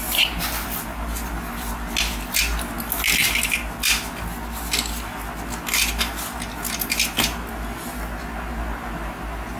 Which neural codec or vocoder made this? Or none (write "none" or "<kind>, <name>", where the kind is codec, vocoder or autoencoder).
none